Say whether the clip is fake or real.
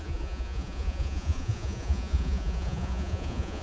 fake